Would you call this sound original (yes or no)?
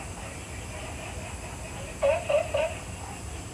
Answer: yes